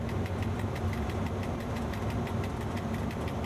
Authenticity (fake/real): real